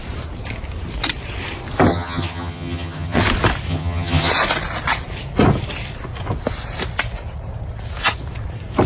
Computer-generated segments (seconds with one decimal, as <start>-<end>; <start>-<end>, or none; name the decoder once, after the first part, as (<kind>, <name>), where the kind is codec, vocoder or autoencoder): 1.9-3.2 (vocoder, HiFi-GAN); 3.7-4.3